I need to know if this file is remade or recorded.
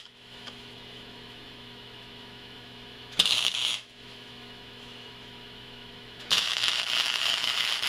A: remade